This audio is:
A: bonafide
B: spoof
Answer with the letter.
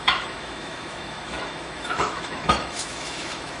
B